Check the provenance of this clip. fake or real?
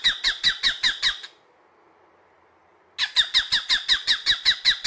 real